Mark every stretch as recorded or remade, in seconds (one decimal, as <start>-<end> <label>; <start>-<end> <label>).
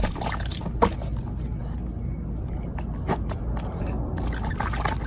0.0-5.1 recorded